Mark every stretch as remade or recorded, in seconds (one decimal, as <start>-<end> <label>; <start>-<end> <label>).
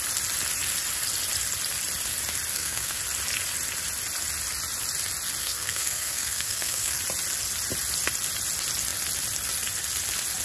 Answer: 0.0-2.5 recorded; 2.5-3.0 remade; 3.0-5.4 recorded; 5.4-7.0 remade; 7.0-10.4 recorded